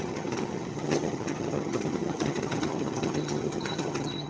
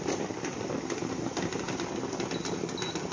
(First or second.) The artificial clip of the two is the first